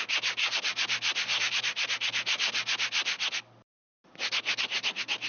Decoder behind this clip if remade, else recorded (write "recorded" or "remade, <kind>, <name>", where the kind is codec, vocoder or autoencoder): recorded